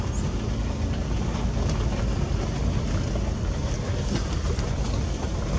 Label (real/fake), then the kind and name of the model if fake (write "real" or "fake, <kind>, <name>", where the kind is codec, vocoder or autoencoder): real